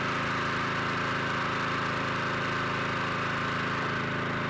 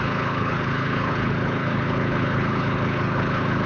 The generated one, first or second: second